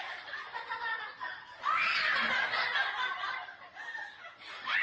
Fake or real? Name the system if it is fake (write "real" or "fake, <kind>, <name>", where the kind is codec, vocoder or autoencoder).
real